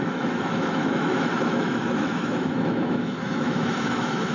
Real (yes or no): no